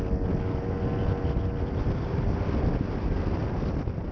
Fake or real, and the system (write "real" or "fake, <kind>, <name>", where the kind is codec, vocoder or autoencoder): real